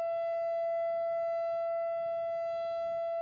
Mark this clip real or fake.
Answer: real